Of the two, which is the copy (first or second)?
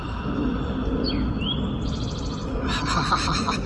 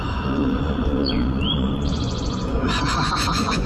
second